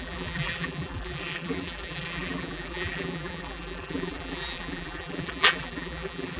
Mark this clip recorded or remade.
remade